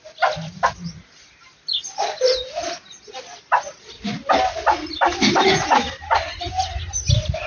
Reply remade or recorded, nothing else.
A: recorded